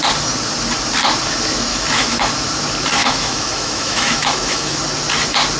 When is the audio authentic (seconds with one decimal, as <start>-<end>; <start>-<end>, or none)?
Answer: 0.0-1.7; 2.3-3.0; 4.8-5.6